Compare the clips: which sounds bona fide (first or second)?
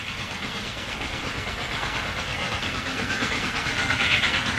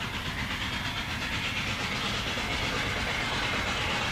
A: second